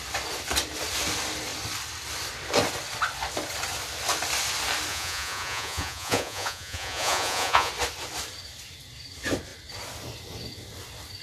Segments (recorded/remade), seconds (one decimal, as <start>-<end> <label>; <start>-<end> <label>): 0.0-4.9 recorded; 4.9-7.7 remade; 7.7-11.2 recorded